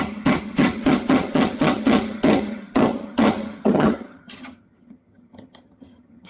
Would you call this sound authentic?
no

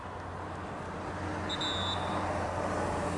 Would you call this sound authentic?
yes